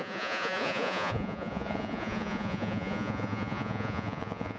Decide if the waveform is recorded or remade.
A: remade